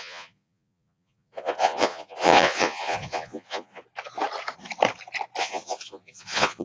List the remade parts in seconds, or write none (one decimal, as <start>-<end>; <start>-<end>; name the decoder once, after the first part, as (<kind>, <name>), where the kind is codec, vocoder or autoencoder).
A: 0.0-3.8 (vocoder, Vocos); 5.4-6.6